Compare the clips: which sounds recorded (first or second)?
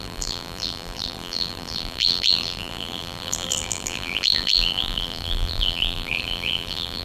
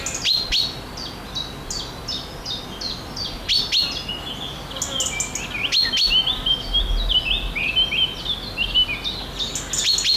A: second